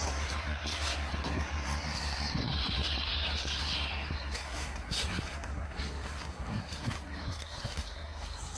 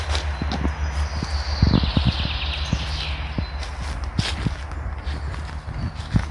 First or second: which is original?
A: second